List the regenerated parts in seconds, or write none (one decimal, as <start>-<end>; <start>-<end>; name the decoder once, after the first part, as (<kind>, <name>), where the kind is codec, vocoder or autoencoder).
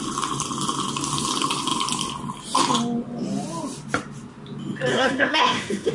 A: 4.9-5.9 (codec, SNAC)